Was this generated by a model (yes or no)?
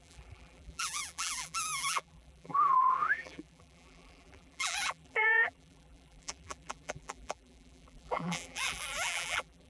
yes